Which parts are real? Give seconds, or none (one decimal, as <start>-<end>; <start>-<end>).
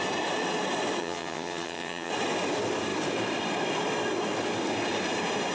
0.0-1.0; 2.1-5.5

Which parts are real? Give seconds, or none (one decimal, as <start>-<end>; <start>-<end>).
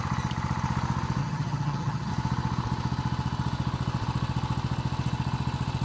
0.0-1.2; 2.1-5.8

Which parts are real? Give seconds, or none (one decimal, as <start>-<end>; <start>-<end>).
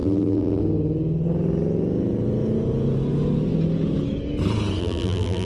0.6-4.8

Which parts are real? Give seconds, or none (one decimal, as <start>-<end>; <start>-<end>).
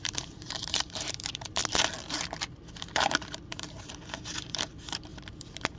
1.6-2.4; 5.1-5.8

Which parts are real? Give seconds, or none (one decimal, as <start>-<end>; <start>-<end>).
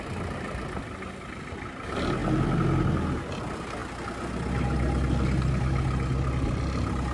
0.0-7.1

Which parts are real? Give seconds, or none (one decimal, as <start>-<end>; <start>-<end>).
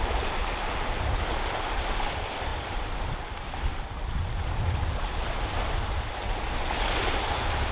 0.0-7.7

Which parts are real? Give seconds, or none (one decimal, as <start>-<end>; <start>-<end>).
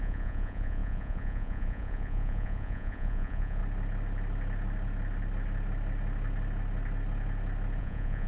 3.6-7.8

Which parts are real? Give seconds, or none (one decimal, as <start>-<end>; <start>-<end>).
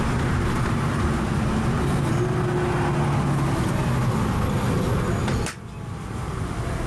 0.0-6.9